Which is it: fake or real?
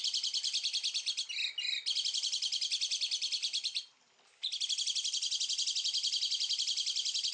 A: real